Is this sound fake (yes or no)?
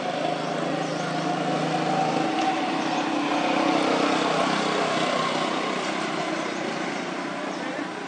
no